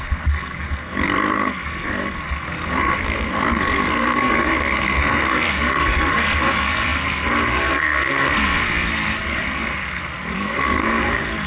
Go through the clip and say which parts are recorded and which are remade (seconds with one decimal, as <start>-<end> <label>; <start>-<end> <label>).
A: 0.0-11.5 remade